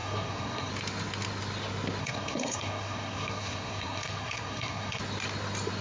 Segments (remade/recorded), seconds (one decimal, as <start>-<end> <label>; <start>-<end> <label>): 0.0-0.7 remade; 0.7-2.0 recorded; 2.0-5.0 remade; 5.0-5.8 recorded